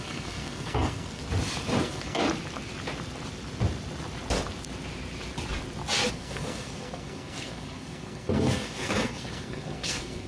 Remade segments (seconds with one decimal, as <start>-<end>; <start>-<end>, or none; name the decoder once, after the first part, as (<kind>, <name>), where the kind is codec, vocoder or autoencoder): 0.0-1.2 (codec, SNAC); 1.8-2.2; 6.1-10.3